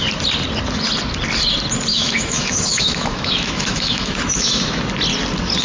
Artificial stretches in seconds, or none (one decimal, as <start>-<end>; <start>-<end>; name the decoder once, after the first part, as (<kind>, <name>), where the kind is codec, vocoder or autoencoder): 1.9-4.8 (autoencoder, DAC-VAE)